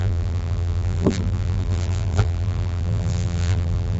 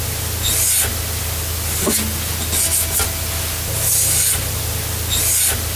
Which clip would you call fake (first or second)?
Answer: first